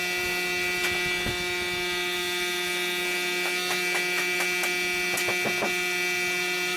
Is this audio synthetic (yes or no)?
no